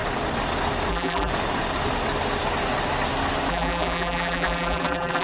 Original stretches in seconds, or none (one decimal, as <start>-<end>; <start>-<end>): 0.0-0.9; 1.3-3.5